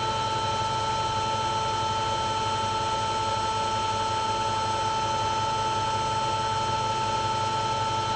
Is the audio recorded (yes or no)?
yes